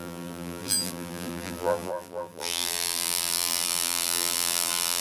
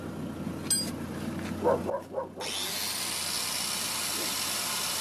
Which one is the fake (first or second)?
first